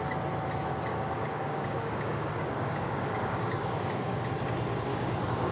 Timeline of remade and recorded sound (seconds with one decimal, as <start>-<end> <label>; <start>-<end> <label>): 0.0-0.9 recorded; 0.9-4.2 remade; 4.2-4.9 recorded; 4.9-5.5 remade